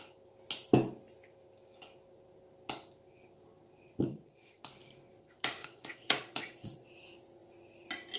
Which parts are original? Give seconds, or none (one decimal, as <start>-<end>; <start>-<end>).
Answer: 0.0-4.1; 4.7-5.6; 6.9-8.2